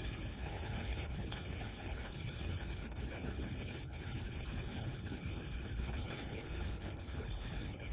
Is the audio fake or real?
fake